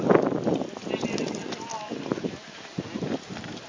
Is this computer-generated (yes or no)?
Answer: no